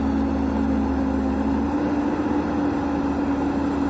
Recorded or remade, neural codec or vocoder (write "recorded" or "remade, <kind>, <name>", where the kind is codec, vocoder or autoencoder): recorded